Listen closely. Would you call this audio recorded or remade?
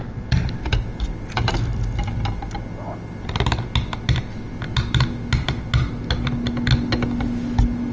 recorded